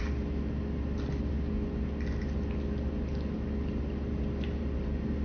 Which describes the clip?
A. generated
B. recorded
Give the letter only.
B